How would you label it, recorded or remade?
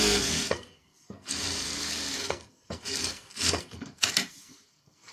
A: remade